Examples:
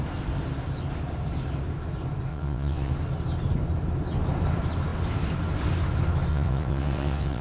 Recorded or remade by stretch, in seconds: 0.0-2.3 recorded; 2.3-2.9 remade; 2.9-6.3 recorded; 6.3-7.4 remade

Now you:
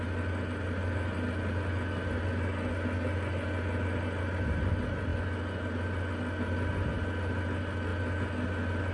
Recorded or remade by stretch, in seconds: 0.0-8.9 recorded

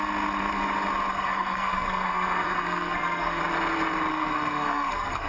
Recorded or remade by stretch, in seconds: 0.0-1.1 recorded; 1.1-3.4 remade; 3.4-4.1 recorded; 4.1-5.3 remade

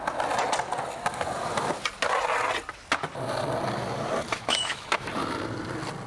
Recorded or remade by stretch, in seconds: 0.0-4.3 recorded; 4.3-5.1 remade; 5.1-6.1 recorded

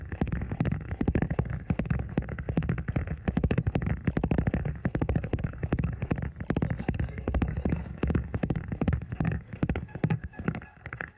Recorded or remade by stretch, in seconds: 0.0-3.9 remade; 3.9-4.5 recorded; 4.5-6.1 remade; 6.1-6.8 recorded; 6.8-11.2 remade

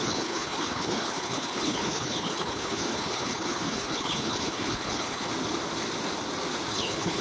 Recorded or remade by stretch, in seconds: 0.0-5.3 remade; 5.3-6.7 recorded; 6.7-7.2 remade

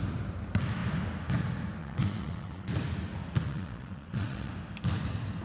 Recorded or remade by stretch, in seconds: 0.0-1.8 recorded; 1.8-2.7 remade; 2.7-3.4 recorded; 3.4-4.5 remade; 4.5-5.4 recorded

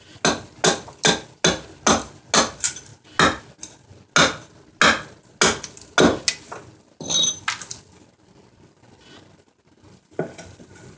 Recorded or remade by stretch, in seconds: 0.0-11.0 recorded